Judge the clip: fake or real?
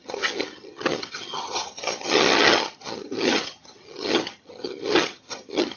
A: fake